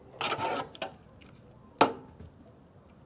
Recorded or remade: recorded